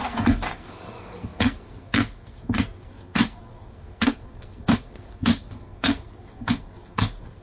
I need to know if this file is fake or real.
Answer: fake